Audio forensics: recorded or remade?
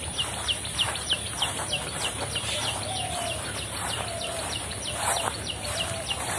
remade